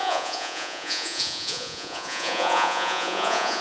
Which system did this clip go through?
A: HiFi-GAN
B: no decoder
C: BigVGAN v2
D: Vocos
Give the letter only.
D